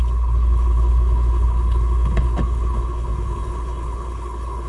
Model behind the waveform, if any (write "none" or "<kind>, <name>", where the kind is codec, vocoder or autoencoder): codec, HILCodec